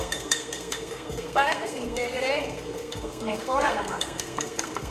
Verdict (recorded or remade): remade